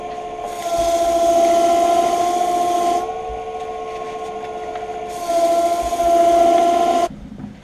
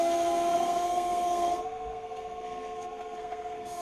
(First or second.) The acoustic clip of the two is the first